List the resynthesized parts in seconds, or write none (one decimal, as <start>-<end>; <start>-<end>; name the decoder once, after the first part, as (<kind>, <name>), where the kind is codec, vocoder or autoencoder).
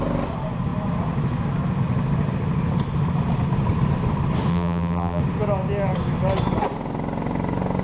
4.5-5.2 (vocoder, BigVGAN v2)